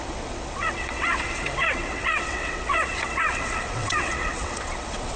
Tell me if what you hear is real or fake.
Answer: fake